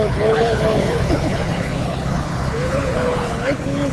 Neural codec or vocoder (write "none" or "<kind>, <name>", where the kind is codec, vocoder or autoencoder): codec, HILCodec